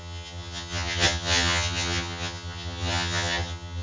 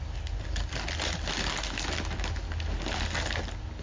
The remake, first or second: first